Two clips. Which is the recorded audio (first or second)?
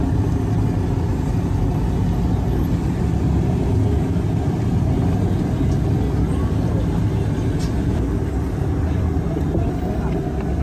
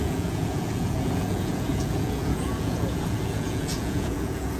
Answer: first